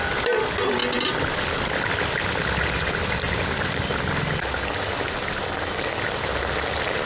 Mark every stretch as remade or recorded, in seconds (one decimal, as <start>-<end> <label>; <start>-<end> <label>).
0.0-7.1 recorded